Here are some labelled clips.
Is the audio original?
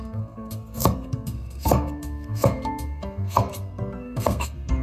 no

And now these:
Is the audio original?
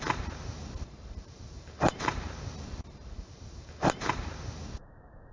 no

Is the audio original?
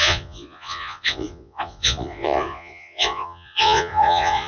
no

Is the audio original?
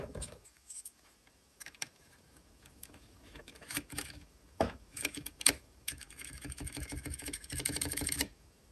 no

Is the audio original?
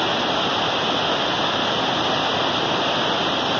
yes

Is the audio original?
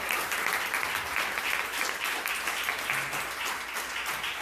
yes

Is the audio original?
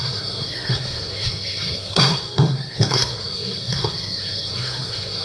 no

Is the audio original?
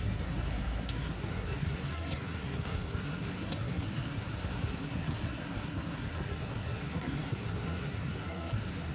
no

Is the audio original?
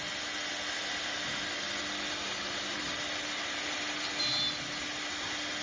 yes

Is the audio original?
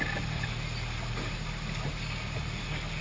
yes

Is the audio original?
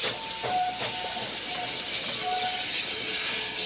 yes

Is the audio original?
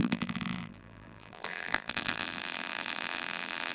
no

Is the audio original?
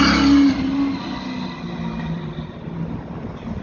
yes